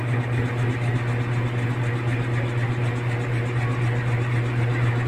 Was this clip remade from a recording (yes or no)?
no